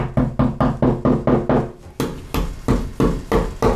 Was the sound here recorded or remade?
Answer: recorded